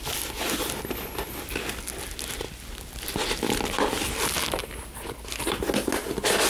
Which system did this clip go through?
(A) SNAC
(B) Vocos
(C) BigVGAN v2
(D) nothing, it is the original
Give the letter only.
D